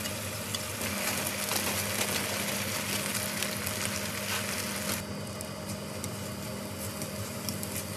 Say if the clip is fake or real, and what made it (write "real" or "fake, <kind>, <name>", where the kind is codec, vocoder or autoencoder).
real